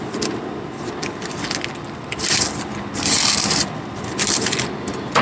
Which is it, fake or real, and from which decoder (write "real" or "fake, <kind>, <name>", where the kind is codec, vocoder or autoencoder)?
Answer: real